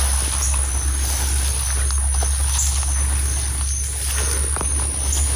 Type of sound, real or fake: real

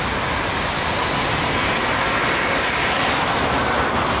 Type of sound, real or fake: real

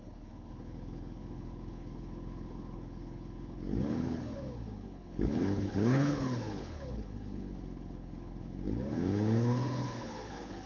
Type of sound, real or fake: fake